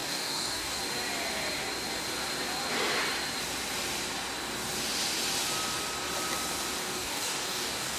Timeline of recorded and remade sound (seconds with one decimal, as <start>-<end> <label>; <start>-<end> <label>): 0.0-0.8 remade; 0.8-6.8 recorded; 6.8-8.0 remade